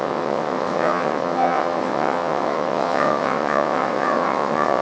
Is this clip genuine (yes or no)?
no